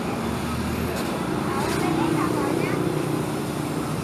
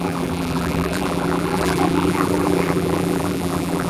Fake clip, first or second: second